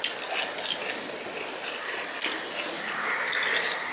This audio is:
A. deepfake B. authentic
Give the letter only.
B